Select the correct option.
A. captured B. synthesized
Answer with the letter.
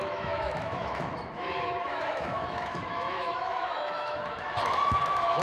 B